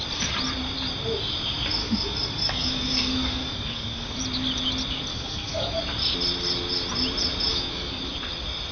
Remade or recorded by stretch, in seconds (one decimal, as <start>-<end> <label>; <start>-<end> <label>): 0.0-1.8 recorded; 1.8-4.2 remade; 4.2-5.1 recorded; 5.1-5.8 remade; 5.8-7.5 recorded; 7.5-8.0 remade; 8.0-8.7 recorded